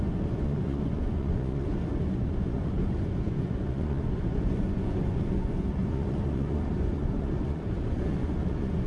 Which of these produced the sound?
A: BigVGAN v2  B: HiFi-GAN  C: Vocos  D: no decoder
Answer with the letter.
C